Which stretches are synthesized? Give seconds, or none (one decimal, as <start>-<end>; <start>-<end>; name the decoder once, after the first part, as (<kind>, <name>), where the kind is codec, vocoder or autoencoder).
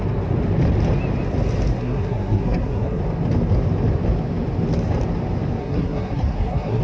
1.7-3.0 (codec, SNAC); 5.6-6.8